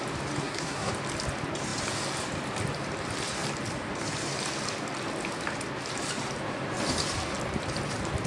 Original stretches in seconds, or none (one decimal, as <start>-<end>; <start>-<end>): 0.0-0.4; 0.9-8.3